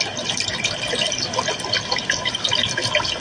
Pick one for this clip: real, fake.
real